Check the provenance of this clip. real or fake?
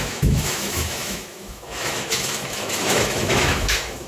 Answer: fake